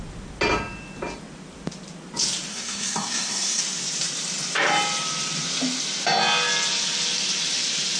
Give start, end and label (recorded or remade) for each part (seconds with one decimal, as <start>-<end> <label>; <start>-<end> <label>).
0.0-2.5 recorded; 2.5-3.6 remade; 3.6-8.0 recorded